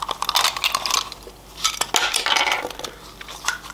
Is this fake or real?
real